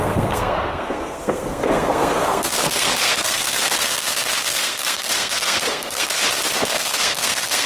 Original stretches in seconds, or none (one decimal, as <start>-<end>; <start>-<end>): 6.2-6.7